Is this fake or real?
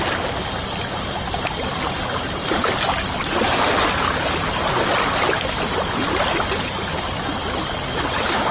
real